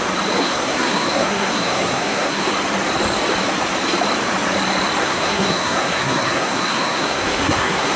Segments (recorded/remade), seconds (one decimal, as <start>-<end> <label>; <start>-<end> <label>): 0.0-0.4 recorded; 0.4-2.5 remade; 2.5-5.0 recorded; 5.0-8.0 remade